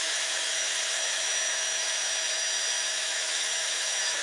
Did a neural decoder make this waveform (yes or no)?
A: yes